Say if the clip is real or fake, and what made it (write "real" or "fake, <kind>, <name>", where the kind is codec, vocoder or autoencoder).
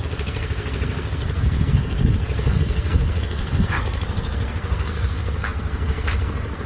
fake, codec, SNAC